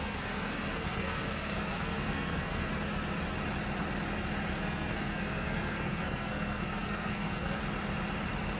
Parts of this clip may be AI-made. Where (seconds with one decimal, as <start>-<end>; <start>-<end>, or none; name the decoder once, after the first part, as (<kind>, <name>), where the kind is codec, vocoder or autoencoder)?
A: 0.0-2.7 (codec, SNAC); 4.6-7.6